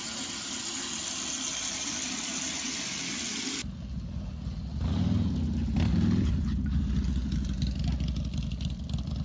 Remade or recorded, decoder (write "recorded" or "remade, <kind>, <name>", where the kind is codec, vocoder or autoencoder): recorded